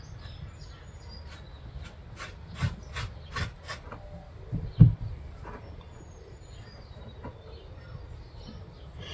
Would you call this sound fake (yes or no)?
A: no